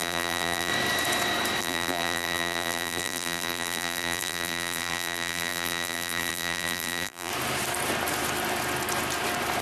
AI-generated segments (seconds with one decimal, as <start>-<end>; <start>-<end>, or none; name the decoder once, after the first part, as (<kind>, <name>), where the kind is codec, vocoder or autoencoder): 0.0-0.7 (vocoder, BigVGAN v2); 1.6-7.3